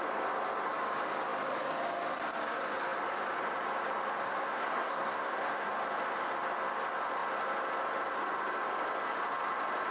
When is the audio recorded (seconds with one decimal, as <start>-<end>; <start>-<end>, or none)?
0.0-4.2; 5.7-9.9

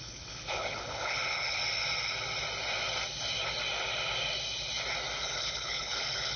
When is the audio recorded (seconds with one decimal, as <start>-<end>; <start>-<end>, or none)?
1.6-5.2

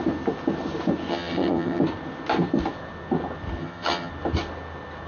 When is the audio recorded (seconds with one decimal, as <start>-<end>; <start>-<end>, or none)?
0.0-1.1; 1.8-3.6; 4.1-5.1